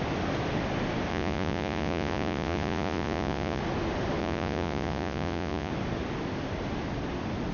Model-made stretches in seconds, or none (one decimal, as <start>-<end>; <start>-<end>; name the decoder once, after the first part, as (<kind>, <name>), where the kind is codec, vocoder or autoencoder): 1.1-3.6 (vocoder, Vocos); 4.2-5.7